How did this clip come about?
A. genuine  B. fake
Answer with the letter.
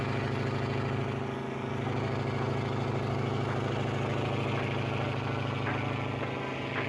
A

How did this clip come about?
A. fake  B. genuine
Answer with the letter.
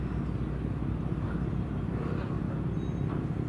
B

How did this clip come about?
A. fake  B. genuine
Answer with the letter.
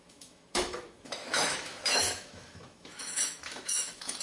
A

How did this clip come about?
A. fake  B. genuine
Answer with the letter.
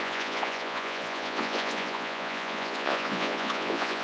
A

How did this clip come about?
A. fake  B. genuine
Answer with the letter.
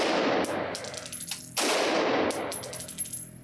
B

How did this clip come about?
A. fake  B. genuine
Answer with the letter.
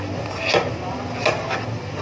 B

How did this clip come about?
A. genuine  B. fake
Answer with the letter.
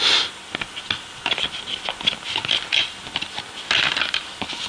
A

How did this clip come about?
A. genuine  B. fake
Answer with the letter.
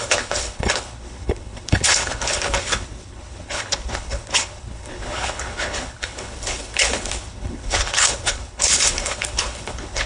B